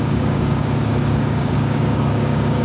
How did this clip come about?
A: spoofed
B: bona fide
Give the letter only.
A